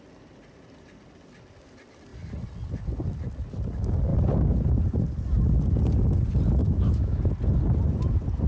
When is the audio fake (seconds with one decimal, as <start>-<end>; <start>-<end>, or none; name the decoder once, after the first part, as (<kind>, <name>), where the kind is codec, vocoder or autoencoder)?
6.6-7.2 (autoencoder, DAC-VAE)